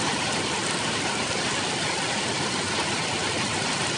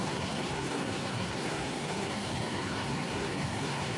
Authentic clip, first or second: first